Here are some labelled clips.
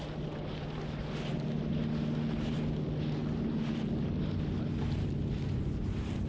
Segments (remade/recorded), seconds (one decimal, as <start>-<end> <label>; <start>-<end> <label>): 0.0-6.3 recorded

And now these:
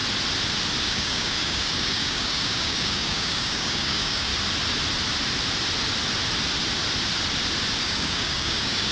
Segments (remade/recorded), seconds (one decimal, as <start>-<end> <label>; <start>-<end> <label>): 0.0-0.8 recorded; 0.8-4.3 remade; 4.3-7.8 recorded; 7.8-8.9 remade

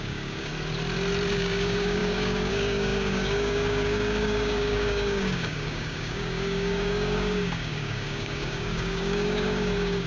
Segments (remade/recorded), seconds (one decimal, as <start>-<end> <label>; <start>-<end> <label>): 0.0-0.5 remade; 0.5-1.3 recorded; 1.3-10.1 remade

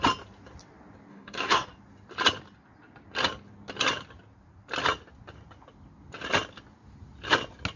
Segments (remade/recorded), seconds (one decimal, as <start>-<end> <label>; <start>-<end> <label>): 0.0-1.1 recorded; 1.1-1.7 remade; 1.7-7.8 recorded

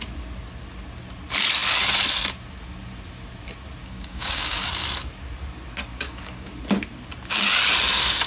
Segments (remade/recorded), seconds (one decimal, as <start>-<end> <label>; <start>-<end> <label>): 0.0-3.8 recorded; 3.8-4.7 remade; 4.7-5.9 recorded; 5.9-6.5 remade; 6.5-8.3 recorded

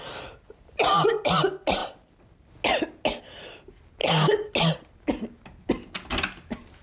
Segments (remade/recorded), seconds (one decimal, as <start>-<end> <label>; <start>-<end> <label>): 0.0-4.0 recorded; 4.0-4.5 remade; 4.5-6.8 recorded